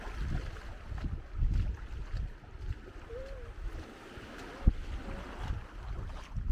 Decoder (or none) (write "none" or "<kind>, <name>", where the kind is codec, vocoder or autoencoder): none